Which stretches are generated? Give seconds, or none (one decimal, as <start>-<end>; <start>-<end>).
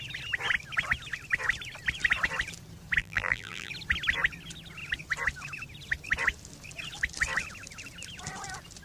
3.0-3.7